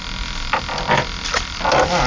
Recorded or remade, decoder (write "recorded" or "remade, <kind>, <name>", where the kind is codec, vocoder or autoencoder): recorded